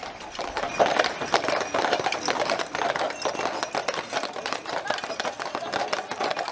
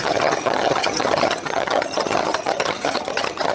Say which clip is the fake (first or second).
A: second